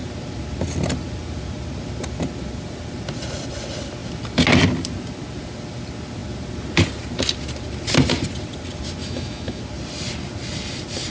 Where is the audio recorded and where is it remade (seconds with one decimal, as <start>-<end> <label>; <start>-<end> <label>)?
0.0-9.0 recorded; 9.0-9.6 remade; 9.6-11.1 recorded